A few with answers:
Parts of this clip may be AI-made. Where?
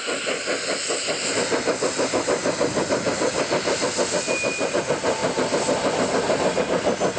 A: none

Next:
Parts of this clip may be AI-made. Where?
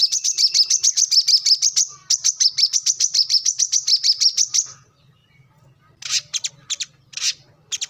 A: none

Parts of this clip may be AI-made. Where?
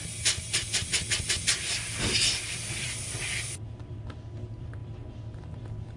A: none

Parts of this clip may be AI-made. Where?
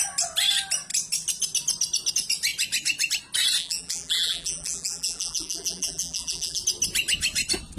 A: 3.6-6.6 (vocoder, BigVGAN v2)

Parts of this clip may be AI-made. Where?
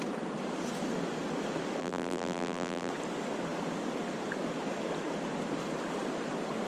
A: 1.8-2.9 (vocoder, BigVGAN v2)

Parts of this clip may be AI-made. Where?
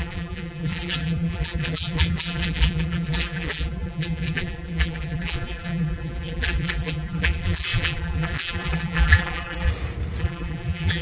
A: 0.0-9.7 (vocoder, BigVGAN v2); 10.2-11.0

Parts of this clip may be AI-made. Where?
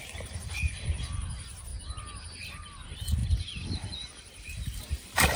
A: 0.0-1.7 (vocoder, BigVGAN v2); 2.5-3.2; 4.5-5.4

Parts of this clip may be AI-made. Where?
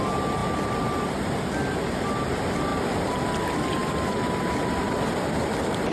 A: 0.4-1.2 (vocoder, BigVGAN v2); 2.7-3.3; 3.8-5.9